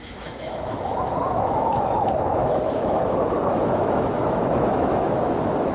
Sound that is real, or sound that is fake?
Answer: fake